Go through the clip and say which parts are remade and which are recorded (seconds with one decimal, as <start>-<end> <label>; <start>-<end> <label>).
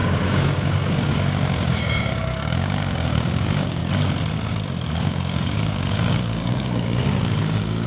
0.0-3.8 remade; 3.8-5.0 recorded; 5.0-7.9 remade